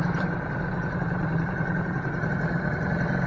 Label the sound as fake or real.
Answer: real